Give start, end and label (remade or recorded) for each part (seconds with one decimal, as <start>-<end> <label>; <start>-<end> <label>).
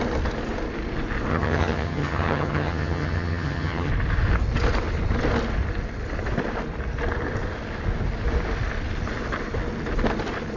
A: 0.0-1.3 recorded; 1.3-3.9 remade; 3.9-10.6 recorded